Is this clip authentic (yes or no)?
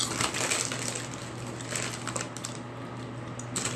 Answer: yes